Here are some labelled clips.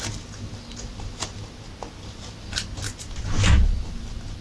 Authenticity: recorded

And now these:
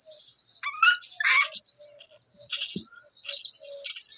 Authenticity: recorded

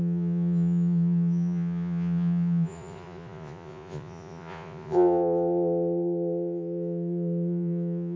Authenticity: remade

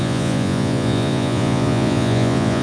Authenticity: remade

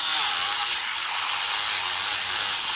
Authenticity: recorded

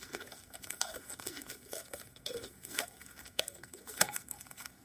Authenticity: remade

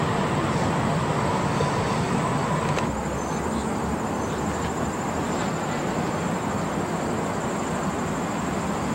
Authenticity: recorded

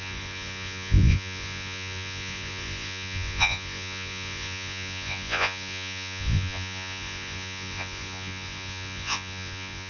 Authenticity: remade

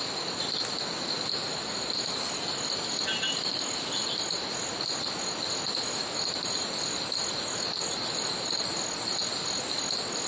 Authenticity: recorded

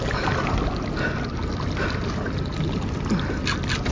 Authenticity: recorded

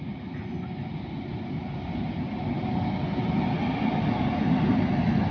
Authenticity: recorded